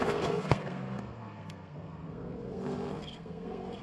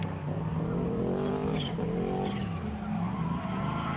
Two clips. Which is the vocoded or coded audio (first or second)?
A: first